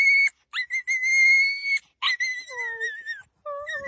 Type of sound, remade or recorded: recorded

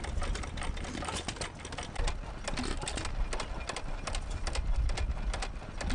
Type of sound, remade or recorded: recorded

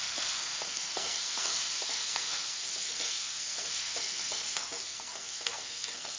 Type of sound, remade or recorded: remade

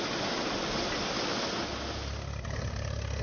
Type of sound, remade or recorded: recorded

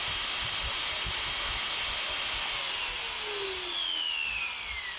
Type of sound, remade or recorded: recorded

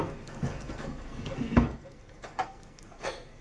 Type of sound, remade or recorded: remade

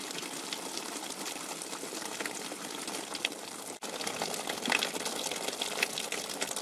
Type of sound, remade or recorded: recorded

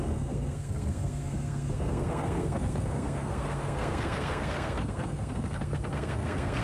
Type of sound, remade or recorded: remade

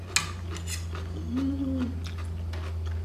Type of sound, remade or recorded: recorded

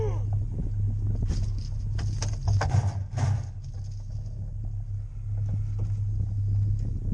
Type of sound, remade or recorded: recorded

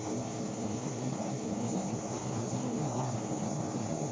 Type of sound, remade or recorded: remade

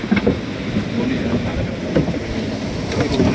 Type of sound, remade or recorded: recorded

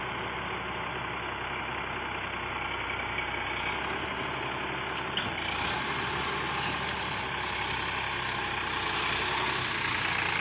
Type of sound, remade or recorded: recorded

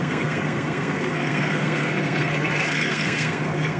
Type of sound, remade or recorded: remade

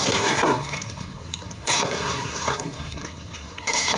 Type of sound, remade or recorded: remade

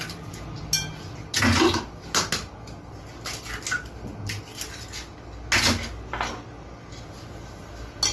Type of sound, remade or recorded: recorded